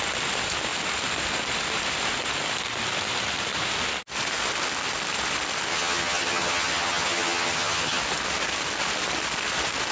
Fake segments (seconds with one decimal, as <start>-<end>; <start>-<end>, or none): 5.7-8.0